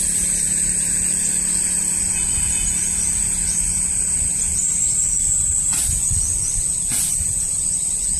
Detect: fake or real real